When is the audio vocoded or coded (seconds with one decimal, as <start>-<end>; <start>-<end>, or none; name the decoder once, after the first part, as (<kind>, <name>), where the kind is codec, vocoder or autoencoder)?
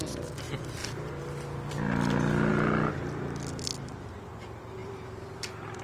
4.8-5.8 (vocoder, BigVGAN v2)